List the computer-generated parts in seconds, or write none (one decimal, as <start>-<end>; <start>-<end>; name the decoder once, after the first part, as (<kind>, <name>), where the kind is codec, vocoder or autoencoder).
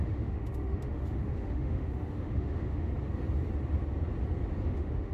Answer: 0.0-2.9 (autoencoder, DAC-VAE); 4.6-5.1